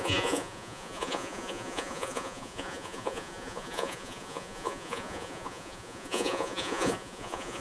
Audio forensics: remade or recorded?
remade